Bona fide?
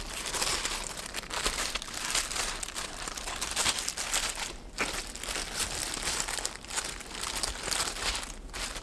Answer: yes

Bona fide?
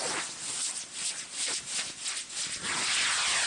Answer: yes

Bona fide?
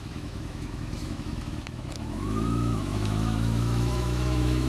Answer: no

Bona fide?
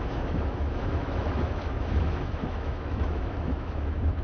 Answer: no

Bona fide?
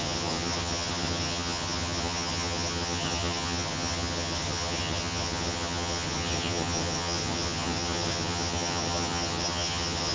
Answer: no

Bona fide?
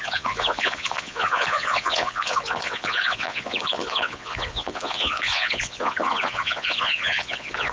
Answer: no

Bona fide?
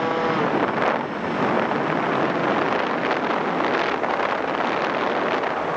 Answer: yes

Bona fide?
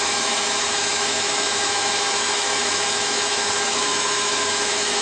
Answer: no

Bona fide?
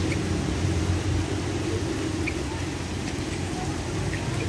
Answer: yes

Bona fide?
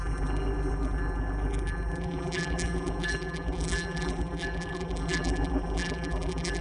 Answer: no